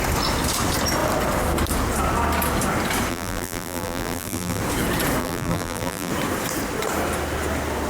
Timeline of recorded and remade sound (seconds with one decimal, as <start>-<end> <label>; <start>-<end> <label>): 0.0-3.1 recorded; 3.1-4.6 remade; 4.6-5.2 recorded; 5.2-6.1 remade; 6.1-7.9 recorded